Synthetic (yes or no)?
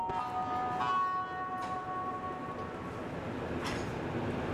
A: no